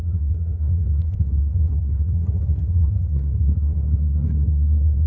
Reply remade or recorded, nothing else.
remade